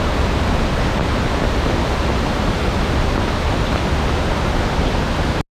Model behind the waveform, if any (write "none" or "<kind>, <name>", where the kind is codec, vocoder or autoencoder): none